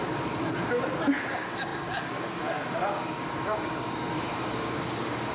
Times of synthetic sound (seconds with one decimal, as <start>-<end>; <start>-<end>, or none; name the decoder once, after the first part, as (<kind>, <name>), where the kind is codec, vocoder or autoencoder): 0.0-0.5 (codec, DAC); 1.1-5.3